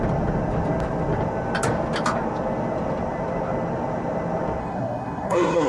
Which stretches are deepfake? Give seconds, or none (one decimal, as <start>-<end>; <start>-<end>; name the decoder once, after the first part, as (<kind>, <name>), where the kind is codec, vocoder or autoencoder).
4.6-5.7 (codec, SNAC)